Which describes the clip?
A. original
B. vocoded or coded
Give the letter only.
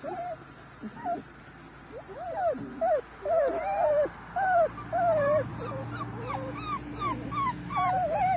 A